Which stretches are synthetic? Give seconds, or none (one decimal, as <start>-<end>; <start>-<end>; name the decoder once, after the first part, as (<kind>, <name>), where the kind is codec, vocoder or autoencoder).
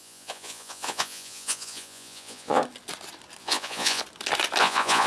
0.0-2.6 (vocoder, Vocos); 3.4-4.0; 4.6-5.1